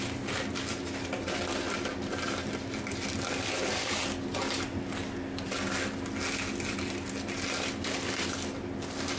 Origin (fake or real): real